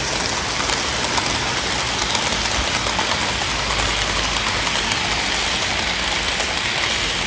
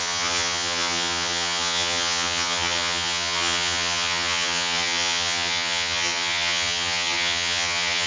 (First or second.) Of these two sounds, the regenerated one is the second